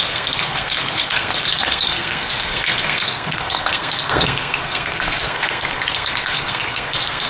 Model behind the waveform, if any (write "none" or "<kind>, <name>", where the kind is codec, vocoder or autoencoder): codec, SNAC